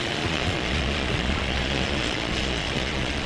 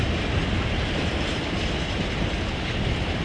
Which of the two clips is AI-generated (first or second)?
first